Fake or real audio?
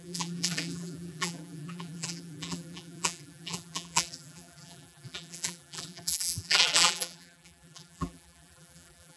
fake